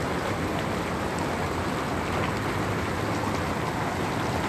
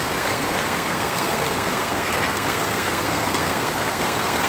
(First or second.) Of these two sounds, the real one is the first